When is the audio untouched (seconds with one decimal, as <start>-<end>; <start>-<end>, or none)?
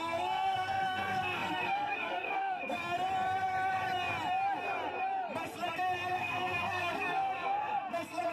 2.8-6.2